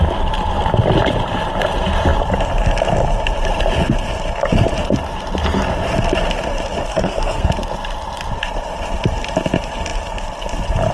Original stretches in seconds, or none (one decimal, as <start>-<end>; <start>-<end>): 0.0-6.9; 7.5-10.9

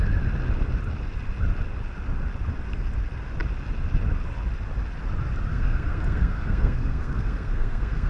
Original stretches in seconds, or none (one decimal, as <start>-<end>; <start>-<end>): 0.0-5.5

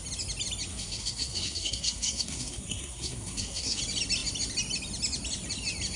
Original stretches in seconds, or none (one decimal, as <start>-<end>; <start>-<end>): 0.0-0.7; 3.8-6.0

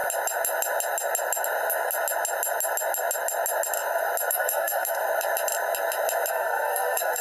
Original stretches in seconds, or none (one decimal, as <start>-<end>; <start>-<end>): 0.0-4.3; 5.0-6.3

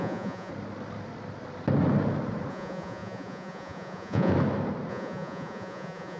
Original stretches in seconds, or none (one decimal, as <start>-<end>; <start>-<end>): 0.5-2.5; 4.3-4.9

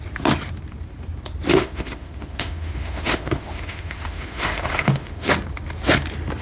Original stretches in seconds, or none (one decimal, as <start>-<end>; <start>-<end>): 0.0-1.5; 5.3-6.4

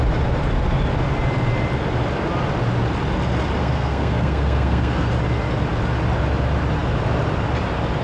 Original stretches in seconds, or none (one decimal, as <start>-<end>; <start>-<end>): 0.0-3.6; 5.1-8.0